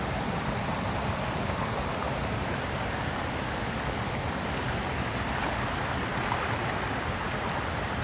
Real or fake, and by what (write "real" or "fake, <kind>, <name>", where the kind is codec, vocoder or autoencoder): real